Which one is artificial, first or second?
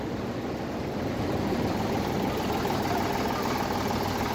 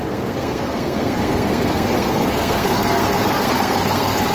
second